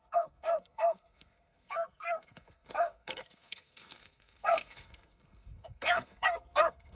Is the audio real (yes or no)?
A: no